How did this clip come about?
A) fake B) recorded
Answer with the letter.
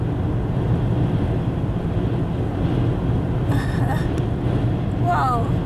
B